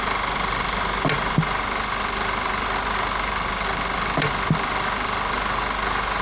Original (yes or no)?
yes